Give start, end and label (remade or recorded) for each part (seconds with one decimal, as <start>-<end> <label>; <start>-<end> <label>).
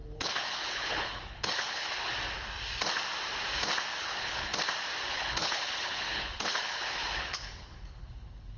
0.0-2.1 remade; 2.1-4.0 recorded; 4.0-4.5 remade; 4.5-5.1 recorded; 5.1-8.6 remade